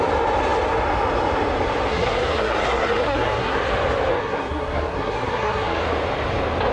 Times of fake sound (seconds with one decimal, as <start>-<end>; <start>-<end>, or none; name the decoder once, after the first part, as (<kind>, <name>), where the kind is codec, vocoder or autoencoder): 1.9-3.6 (codec, SNAC); 4.1-5.8